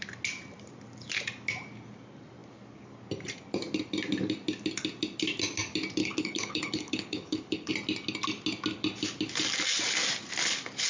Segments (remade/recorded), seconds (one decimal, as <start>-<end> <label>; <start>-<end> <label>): 0.0-6.0 recorded; 6.0-7.7 remade; 7.7-10.9 recorded